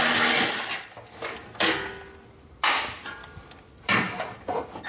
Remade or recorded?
recorded